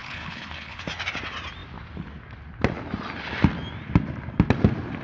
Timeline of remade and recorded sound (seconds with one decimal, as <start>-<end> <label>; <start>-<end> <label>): 0.0-0.8 remade; 0.8-5.0 recorded